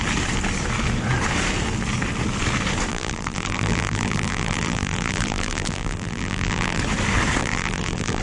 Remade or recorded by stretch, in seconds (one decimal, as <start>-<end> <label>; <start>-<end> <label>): 0.0-2.9 recorded; 2.9-6.8 remade; 6.8-7.4 recorded; 7.4-8.2 remade